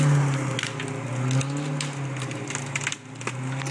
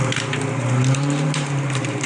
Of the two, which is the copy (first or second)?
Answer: second